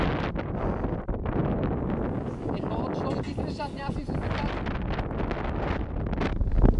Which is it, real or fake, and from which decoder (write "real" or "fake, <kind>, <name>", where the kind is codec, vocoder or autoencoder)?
real